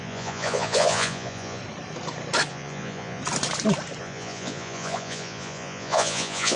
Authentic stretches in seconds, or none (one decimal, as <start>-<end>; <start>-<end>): 1.6-2.5; 3.2-4.0